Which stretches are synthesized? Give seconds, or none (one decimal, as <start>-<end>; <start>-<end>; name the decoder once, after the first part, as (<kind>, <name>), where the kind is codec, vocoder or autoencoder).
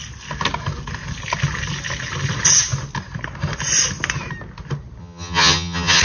5.0-6.0 (vocoder, HiFi-GAN)